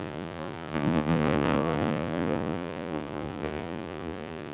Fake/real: fake